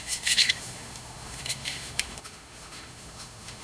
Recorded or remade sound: remade